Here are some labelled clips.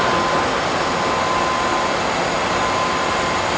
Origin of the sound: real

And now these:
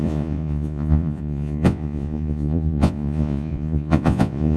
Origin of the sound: fake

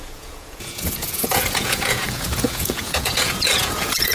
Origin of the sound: fake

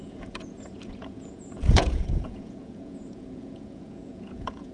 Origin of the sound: fake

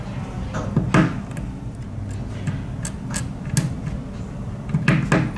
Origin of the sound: real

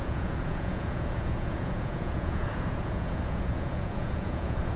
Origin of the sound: fake